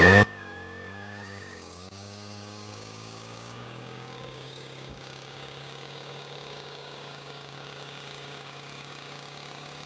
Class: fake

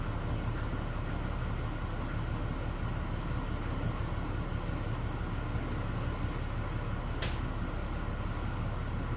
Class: real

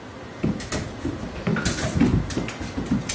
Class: real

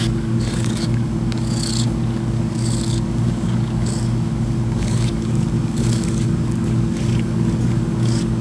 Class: fake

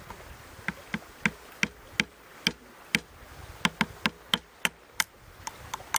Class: real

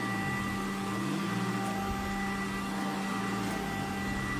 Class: real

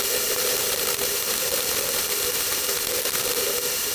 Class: real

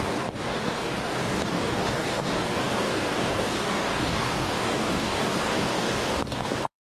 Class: fake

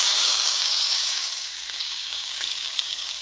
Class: fake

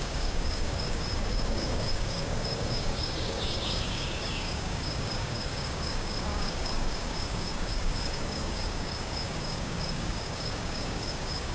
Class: fake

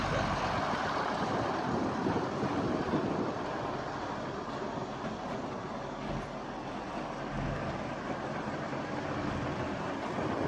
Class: real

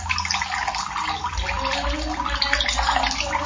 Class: real